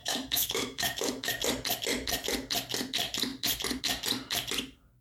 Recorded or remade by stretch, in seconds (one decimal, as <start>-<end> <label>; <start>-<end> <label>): 0.0-1.3 remade; 1.3-5.0 recorded